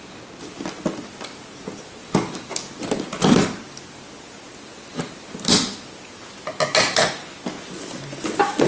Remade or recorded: recorded